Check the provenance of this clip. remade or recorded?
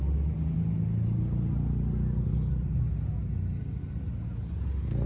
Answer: recorded